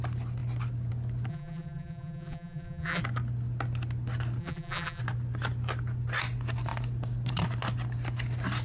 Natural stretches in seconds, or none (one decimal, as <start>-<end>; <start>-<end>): 0.0-1.3; 3.0-4.4; 5.0-8.6